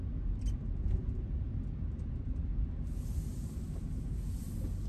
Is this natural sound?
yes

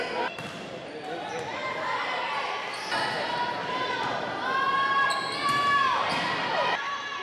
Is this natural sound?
yes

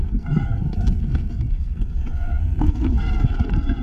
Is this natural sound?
no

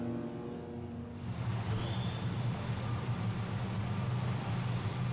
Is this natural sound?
yes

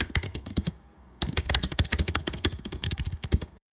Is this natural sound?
no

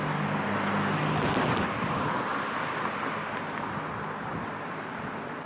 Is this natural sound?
yes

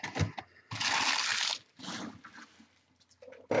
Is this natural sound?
yes